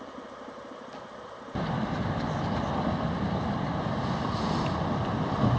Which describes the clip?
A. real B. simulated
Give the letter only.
A